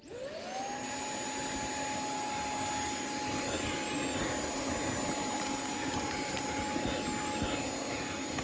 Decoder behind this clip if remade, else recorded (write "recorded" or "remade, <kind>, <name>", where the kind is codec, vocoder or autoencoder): recorded